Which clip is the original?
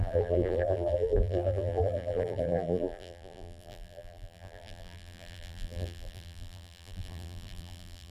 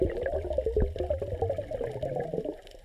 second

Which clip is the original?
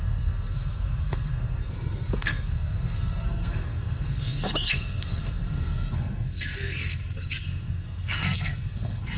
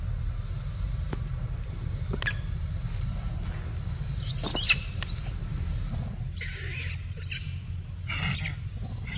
second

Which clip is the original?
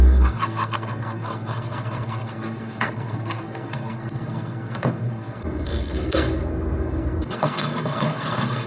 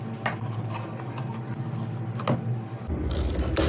second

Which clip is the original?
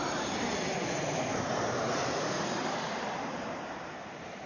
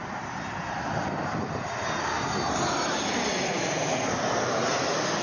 second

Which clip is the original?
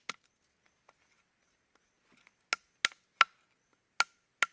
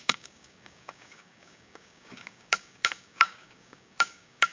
first